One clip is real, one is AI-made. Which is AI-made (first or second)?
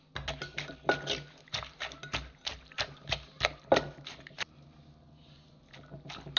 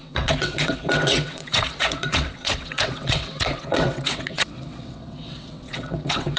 second